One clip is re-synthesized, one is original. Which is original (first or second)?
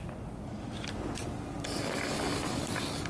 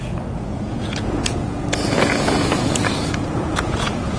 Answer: first